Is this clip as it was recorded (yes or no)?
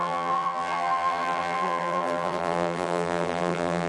no